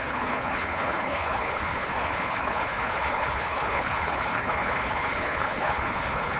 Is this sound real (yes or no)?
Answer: no